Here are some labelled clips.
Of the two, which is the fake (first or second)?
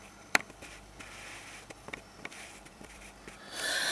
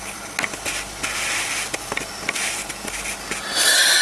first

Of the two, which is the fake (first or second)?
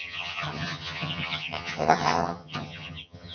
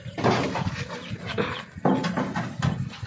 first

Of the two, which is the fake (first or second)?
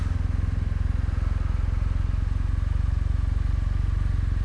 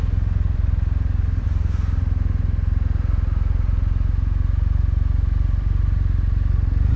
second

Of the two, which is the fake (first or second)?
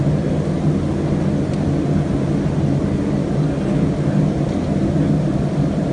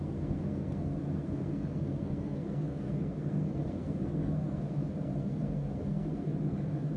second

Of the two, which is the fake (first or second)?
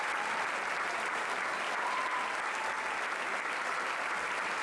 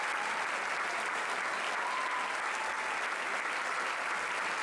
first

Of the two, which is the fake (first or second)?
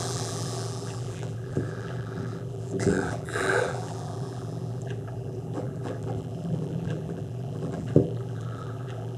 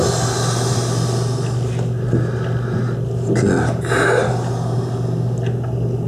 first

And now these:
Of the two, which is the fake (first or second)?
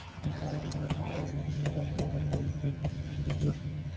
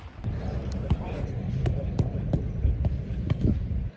first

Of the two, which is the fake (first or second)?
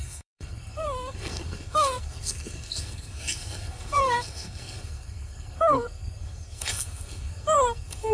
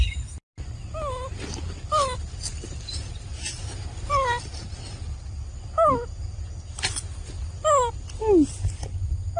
first